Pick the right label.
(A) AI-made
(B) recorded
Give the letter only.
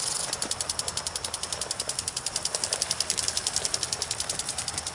B